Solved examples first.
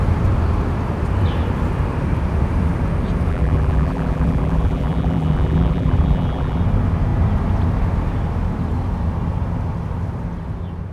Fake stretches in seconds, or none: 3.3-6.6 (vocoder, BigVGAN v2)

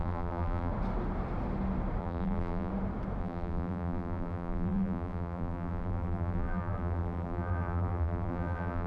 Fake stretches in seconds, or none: 0.0-0.7 (vocoder, BigVGAN v2); 2.0-2.7; 3.2-8.9

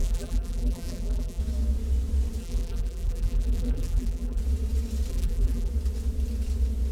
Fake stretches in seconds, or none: 0.0-1.4 (vocoder, BigVGAN v2); 2.4-4.4; 5.1-5.7

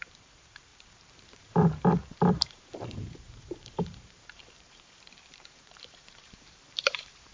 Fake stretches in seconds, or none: 0.0-7.3 (vocoder, BigVGAN v2)

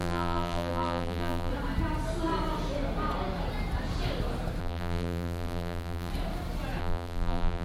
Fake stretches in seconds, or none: 0.0-1.5 (vocoder, BigVGAN v2); 4.6-6.1; 6.8-7.6

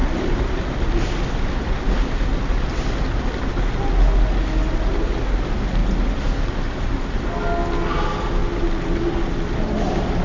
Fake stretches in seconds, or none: 0.0-3.5 (vocoder, BigVGAN v2); 5.8-7.4

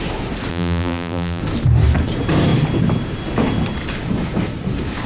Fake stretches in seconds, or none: 0.5-1.4 (vocoder, BigVGAN v2)

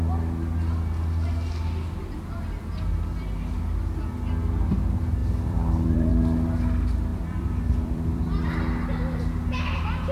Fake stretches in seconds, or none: 5.2-6.1 (vocoder, BigVGAN v2); 7.1-8.2